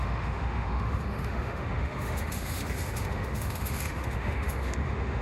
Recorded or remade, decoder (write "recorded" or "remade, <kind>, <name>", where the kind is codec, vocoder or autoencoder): remade, autoencoder, DAC-VAE